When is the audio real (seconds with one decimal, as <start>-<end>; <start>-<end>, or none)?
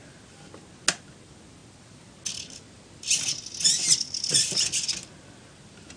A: 0.0-6.0